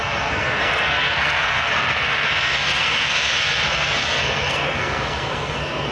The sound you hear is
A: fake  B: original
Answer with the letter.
A